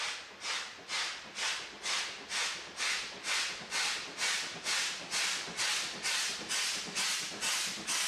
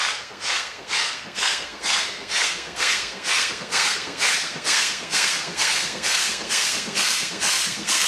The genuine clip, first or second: first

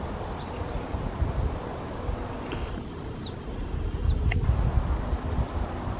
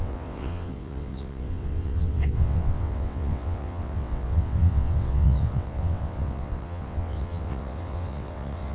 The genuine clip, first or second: first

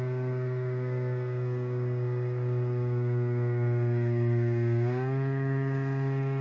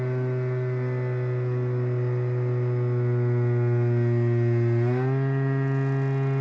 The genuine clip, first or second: second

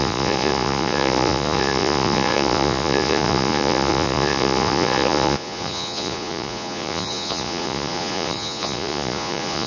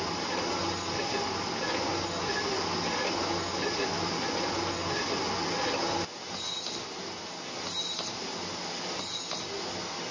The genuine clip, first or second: second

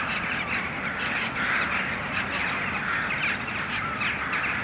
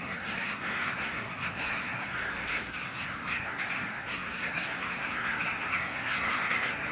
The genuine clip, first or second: first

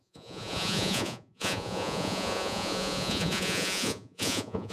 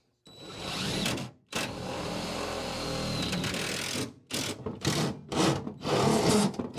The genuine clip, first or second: second